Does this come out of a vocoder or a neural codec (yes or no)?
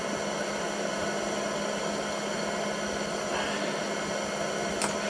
no